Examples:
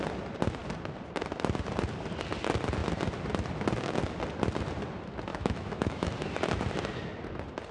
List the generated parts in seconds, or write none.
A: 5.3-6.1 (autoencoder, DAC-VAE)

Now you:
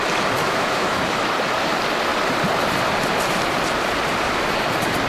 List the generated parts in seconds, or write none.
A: 0.4-1.3 (autoencoder, DAC-VAE)

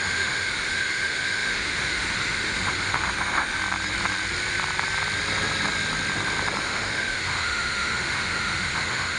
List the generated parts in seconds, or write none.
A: 0.0-3.6 (autoencoder, DAC-VAE); 6.6-9.2

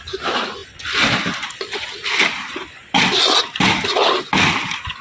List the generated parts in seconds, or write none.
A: none